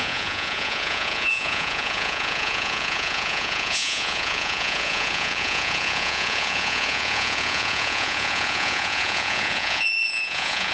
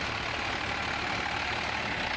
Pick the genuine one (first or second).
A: second